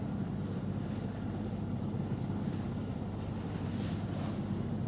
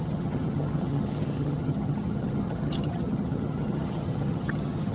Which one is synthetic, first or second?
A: second